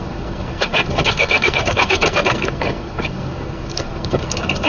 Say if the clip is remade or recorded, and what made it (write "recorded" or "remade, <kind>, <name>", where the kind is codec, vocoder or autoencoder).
remade, codec, SNAC